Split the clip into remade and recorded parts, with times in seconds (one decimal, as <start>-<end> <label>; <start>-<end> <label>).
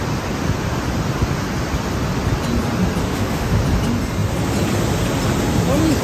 0.0-3.0 recorded; 3.0-3.6 remade; 3.6-6.0 recorded